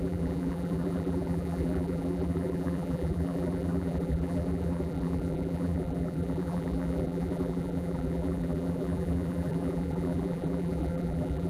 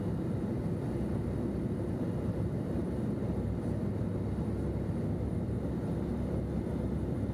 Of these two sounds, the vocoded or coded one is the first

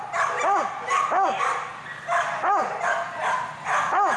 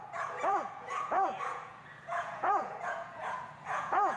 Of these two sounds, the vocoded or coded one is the second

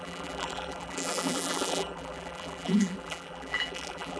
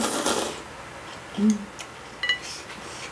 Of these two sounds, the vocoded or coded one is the first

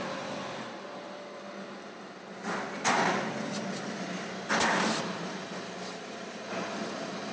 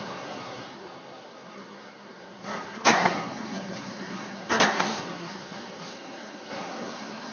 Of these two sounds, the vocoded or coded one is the second